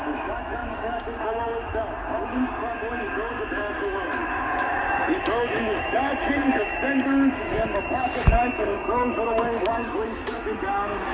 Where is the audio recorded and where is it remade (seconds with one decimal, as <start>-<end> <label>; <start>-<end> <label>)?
0.0-11.1 remade